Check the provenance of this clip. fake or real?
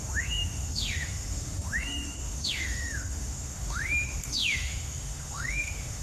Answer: fake